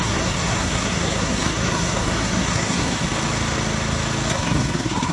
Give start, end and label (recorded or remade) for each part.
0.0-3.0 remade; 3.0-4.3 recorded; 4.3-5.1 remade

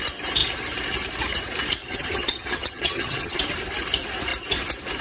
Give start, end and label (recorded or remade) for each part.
0.0-1.8 recorded; 1.8-3.4 remade; 3.4-5.0 recorded

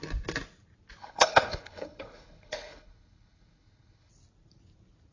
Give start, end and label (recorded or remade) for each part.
0.0-1.0 recorded; 1.0-4.1 remade; 4.1-5.1 recorded

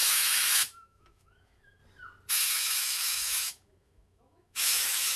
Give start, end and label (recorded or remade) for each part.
0.0-1.8 remade; 1.8-2.3 recorded; 2.3-5.2 remade

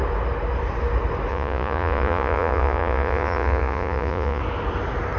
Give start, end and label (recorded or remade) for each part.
0.0-1.3 recorded; 1.3-4.4 remade; 4.4-5.2 recorded